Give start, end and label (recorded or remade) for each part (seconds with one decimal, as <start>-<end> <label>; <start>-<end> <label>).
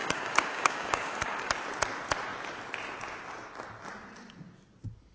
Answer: 0.0-1.5 remade; 1.5-5.1 recorded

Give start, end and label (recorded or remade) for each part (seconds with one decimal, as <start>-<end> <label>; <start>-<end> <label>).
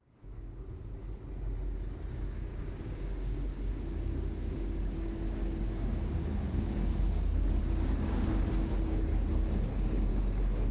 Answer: 0.0-1.0 remade; 1.0-2.1 recorded; 2.1-10.7 remade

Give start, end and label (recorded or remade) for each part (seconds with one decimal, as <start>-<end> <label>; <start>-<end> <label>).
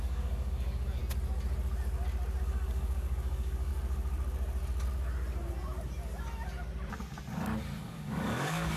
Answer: 0.0-1.0 remade; 1.0-2.4 recorded; 2.4-3.7 remade; 3.7-7.8 recorded; 7.8-8.8 remade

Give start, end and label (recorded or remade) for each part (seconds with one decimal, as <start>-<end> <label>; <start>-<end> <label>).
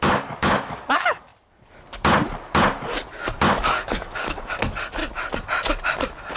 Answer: 0.0-1.3 remade; 1.3-3.5 recorded; 3.5-5.0 remade; 5.0-6.4 recorded